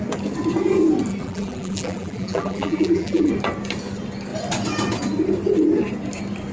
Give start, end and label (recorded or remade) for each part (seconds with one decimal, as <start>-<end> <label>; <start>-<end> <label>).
0.0-1.1 recorded; 1.1-3.3 remade; 3.3-6.5 recorded